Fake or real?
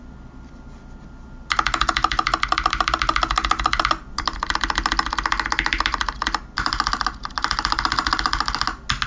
real